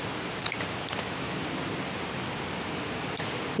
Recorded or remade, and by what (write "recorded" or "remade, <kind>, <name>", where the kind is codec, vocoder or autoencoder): recorded